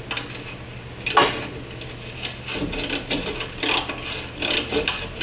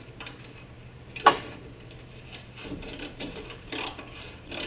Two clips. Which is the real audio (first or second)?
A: first